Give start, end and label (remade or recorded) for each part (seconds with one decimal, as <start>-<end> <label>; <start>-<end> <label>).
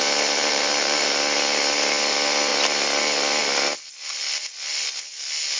0.0-0.4 recorded; 0.4-1.0 remade; 1.0-5.6 recorded